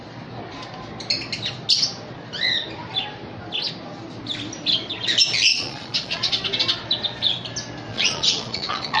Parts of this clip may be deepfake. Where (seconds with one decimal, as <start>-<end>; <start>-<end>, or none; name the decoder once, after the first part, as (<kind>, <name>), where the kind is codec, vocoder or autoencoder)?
5.5-6.3 (vocoder, Vocos); 7.9-9.0